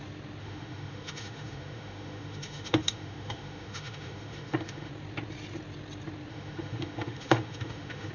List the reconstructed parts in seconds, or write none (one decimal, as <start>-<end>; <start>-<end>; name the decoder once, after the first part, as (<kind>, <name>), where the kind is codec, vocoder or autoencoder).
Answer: 0.4-4.9 (autoencoder, DAC-VAE); 6.3-8.1